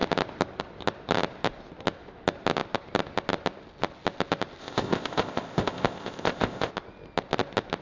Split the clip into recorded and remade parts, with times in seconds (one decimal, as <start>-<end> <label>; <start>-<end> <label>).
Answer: 0.0-4.6 recorded; 4.6-6.7 remade; 6.7-7.8 recorded